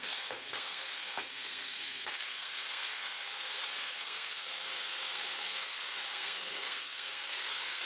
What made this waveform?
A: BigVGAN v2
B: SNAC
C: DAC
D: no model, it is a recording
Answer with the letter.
B